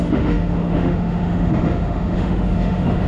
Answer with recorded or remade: remade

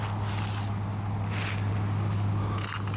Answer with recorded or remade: recorded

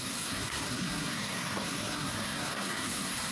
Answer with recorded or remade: remade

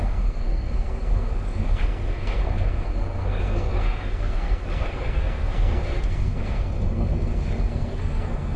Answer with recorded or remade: remade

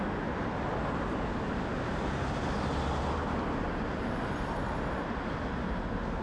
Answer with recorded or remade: recorded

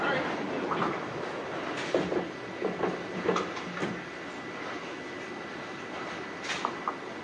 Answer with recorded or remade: recorded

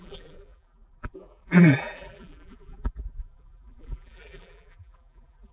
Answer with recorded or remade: remade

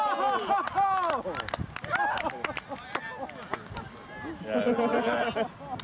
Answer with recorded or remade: recorded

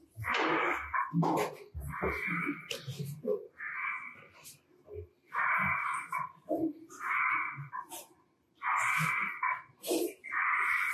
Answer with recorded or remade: recorded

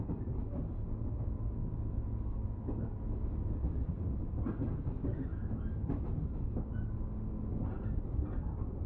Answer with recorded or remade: recorded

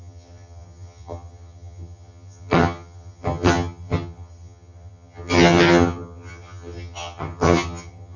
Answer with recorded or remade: remade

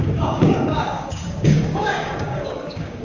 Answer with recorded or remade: remade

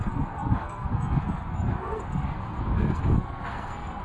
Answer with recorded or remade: remade